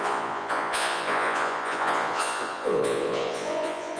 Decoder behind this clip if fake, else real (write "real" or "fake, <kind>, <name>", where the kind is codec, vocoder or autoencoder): fake, vocoder, Vocos